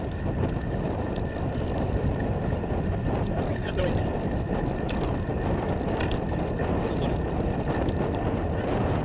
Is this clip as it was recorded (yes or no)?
yes